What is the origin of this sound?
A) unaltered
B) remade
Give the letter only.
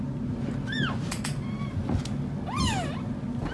A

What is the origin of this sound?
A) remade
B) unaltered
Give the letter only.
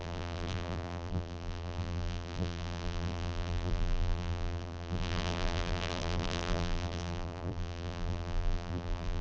A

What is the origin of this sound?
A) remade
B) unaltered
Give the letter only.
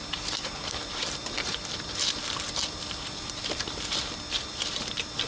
A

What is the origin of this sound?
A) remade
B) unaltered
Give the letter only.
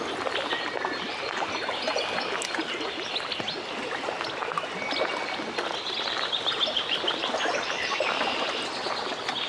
B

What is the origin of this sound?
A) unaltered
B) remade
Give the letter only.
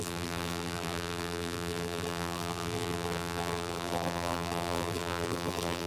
B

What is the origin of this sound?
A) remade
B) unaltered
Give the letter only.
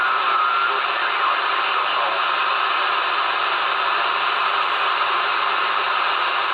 B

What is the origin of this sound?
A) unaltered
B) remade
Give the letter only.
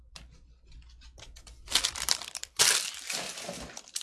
B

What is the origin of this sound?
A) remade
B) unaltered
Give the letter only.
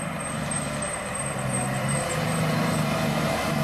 A